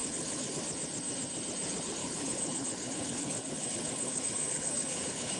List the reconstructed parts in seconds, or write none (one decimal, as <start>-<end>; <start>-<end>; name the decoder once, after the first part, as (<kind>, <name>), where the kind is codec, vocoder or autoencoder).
0.0-0.6 (codec, HILCodec); 2.0-5.4